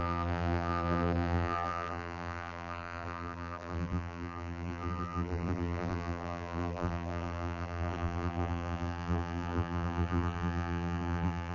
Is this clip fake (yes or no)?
yes